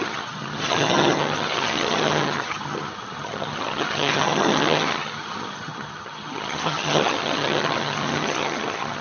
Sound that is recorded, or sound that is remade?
remade